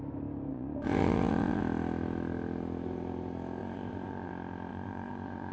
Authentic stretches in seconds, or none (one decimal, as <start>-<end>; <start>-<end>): 0.0-0.5; 1.6-3.6; 4.3-4.7